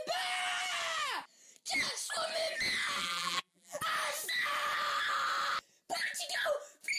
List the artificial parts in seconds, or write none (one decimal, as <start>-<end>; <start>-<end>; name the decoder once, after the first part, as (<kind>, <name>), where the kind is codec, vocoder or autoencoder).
3.0-3.8 (vocoder, BigVGAN v2)